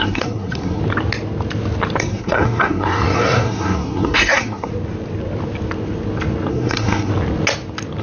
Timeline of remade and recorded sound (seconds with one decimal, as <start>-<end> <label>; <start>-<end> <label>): 0.0-0.8 remade; 0.8-2.0 recorded; 2.0-4.7 remade; 4.7-6.5 recorded; 6.5-7.1 remade; 7.1-8.0 recorded